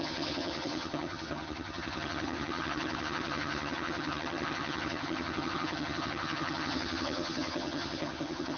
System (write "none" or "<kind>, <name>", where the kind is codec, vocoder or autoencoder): vocoder, HiFi-GAN